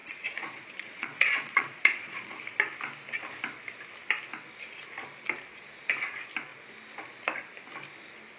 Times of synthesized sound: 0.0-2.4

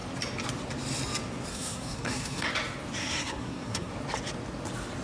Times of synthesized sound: 1.5-2.5; 3.0-3.9